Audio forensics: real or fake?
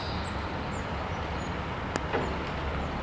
real